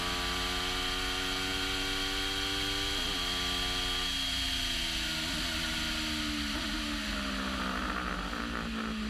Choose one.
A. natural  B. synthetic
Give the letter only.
A